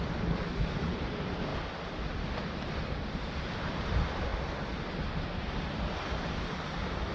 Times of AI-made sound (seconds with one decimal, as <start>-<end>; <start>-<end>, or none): 0.0-1.5; 2.1-7.1